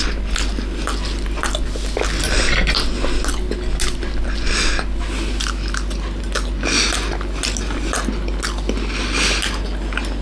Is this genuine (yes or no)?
yes